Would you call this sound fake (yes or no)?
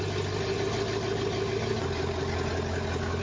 no